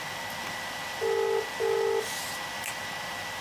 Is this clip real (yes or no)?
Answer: yes